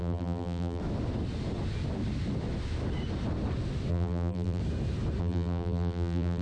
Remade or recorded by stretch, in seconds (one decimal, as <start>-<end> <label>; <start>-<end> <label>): 0.0-0.8 remade; 0.8-3.9 recorded; 3.9-4.6 remade; 4.6-5.2 recorded; 5.2-6.4 remade

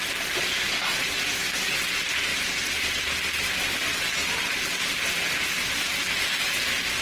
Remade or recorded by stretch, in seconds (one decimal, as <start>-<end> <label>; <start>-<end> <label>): 0.0-7.0 recorded

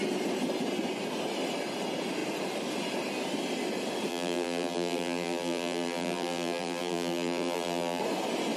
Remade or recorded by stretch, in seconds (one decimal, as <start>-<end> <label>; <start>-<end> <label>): 0.0-4.1 recorded; 4.1-8.0 remade; 8.0-8.6 recorded

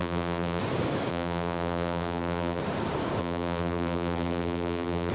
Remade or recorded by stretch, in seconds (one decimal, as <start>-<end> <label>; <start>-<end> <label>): 0.0-0.6 remade; 0.6-1.1 recorded; 1.1-2.6 remade; 2.6-3.2 recorded; 3.2-5.1 remade